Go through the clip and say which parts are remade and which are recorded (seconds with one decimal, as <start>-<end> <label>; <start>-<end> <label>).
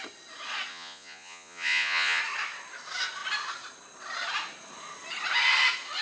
0.0-0.7 recorded; 0.7-2.2 remade; 2.2-6.0 recorded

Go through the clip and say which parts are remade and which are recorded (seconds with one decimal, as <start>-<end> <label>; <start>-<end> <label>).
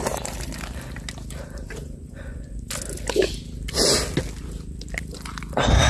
0.0-1.8 recorded; 1.8-2.7 remade; 2.7-5.9 recorded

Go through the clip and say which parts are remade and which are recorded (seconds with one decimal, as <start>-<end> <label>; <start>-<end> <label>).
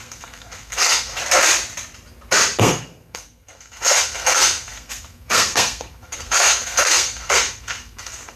0.0-1.2 remade; 1.2-2.6 recorded; 2.6-8.4 remade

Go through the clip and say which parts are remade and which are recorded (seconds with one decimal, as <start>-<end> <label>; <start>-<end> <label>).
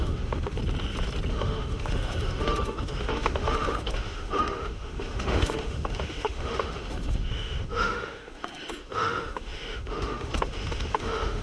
0.0-0.6 remade; 0.6-1.3 recorded; 1.3-11.4 remade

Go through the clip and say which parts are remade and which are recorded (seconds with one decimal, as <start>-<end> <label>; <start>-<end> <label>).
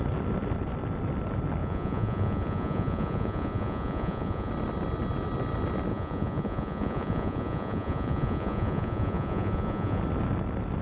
0.0-1.6 recorded; 1.6-4.5 remade; 4.5-5.9 recorded; 5.9-10.0 remade; 10.0-10.8 recorded